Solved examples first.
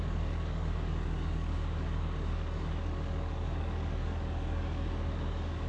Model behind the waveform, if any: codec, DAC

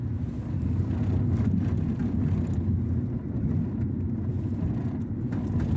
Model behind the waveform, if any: none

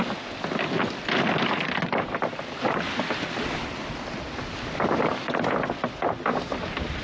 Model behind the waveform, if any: none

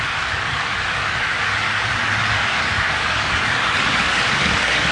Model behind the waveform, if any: codec, DAC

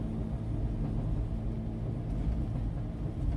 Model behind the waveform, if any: none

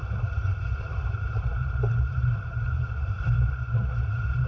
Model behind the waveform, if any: vocoder, BigVGAN v2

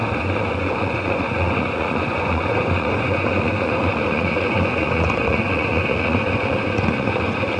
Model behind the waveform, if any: vocoder, Vocos